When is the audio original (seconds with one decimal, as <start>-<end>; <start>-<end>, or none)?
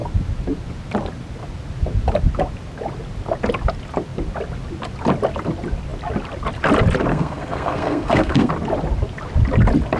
0.0-7.1; 8.5-10.0